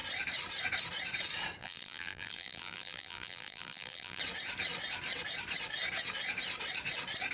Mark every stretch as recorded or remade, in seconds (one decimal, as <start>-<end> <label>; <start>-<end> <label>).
0.0-1.6 recorded; 1.6-4.2 remade; 4.2-7.3 recorded